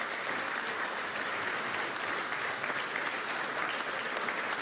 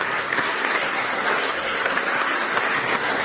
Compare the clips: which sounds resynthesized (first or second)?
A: second